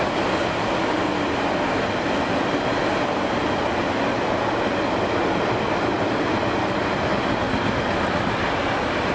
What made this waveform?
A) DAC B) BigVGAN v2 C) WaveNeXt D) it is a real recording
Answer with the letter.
D